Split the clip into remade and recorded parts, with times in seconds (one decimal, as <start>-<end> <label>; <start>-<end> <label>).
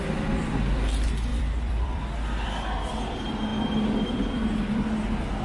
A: 0.0-1.3 recorded; 1.3-2.0 remade; 2.0-3.5 recorded; 3.5-4.8 remade; 4.8-5.4 recorded